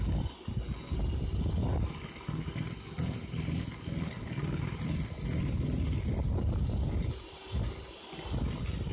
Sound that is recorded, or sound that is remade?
recorded